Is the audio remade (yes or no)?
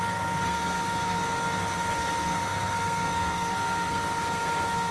yes